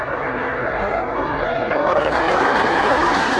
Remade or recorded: remade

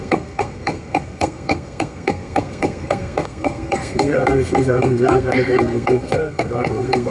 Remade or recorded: remade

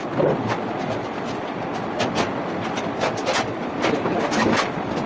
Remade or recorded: recorded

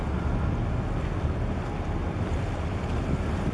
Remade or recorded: recorded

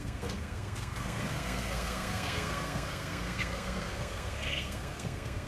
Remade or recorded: remade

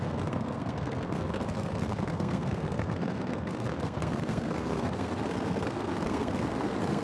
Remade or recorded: remade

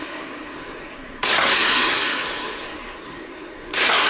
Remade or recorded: remade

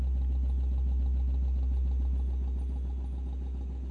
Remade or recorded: recorded